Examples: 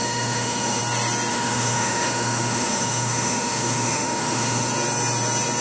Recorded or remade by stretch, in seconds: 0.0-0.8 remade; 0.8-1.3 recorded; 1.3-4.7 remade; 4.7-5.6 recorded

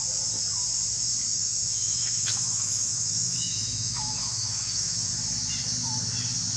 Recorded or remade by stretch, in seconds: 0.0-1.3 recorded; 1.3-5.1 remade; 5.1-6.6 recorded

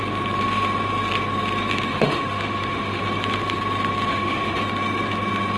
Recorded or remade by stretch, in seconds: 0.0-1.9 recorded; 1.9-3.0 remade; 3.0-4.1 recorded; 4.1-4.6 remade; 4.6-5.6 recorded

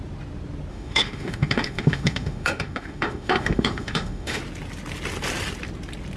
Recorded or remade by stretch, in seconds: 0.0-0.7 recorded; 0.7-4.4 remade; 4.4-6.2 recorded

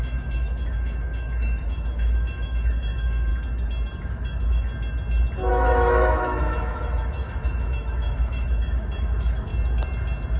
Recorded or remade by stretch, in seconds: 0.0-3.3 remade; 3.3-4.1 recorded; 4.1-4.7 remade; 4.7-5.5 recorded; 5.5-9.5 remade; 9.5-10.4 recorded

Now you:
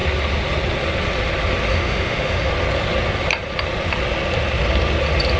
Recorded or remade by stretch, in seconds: 0.0-1.7 recorded; 1.7-2.5 remade; 2.5-5.4 recorded